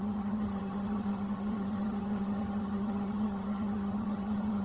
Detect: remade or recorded remade